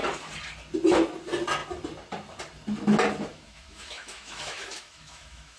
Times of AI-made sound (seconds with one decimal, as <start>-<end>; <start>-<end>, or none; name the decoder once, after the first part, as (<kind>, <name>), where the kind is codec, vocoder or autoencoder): 3.3-5.6 (autoencoder, DAC-VAE)